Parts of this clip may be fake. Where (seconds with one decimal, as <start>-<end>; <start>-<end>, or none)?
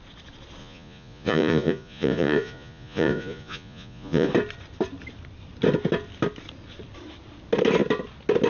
0.6-4.3